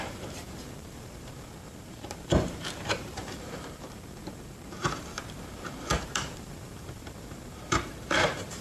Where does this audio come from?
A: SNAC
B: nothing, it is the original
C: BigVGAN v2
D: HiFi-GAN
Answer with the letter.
C